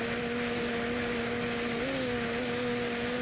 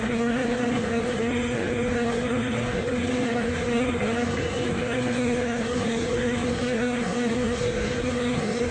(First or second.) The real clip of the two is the first